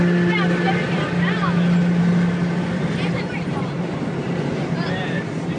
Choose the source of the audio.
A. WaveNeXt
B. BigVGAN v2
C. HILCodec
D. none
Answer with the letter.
D